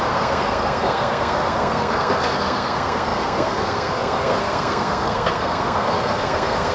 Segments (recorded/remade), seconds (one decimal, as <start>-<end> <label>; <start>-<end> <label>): 0.0-6.7 remade